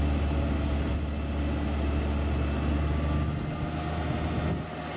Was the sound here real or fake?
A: real